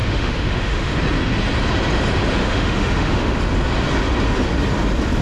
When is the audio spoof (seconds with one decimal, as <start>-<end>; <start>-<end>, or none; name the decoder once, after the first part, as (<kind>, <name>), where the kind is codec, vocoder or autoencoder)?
0.0-1.0 (autoencoder, DAC-VAE); 2.4-3.4